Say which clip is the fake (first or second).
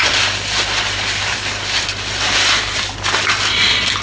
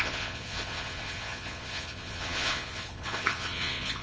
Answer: second